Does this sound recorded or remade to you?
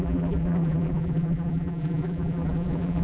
remade